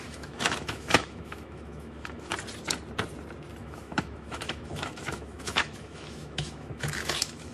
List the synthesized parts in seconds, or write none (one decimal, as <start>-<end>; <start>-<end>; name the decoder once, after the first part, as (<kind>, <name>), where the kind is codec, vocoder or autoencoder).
0.0-2.3 (autoencoder, DAC-VAE); 3.6-7.5